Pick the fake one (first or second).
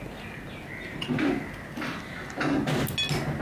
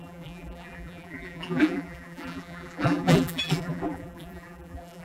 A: second